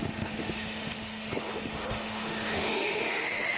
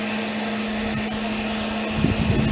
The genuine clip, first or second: second